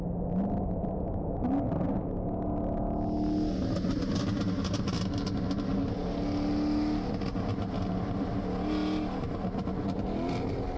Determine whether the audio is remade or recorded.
recorded